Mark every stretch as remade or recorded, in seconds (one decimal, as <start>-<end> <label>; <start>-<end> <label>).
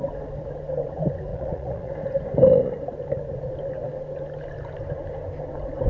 0.0-1.3 recorded; 1.3-1.9 remade; 1.9-5.9 recorded